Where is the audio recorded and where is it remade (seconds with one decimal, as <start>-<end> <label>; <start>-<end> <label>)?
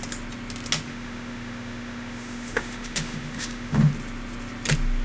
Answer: 0.0-0.9 recorded; 0.9-3.9 remade; 3.9-5.0 recorded